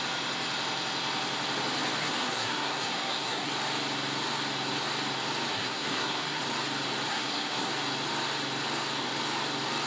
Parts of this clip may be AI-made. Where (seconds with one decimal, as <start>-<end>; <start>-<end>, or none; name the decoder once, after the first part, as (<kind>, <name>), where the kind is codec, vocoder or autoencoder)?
2.0-3.5 (codec, SNAC); 5.5-6.4; 7.1-7.7